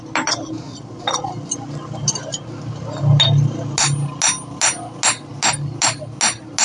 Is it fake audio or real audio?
real